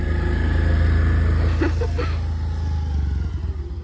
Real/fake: real